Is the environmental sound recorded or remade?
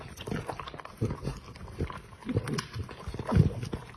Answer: recorded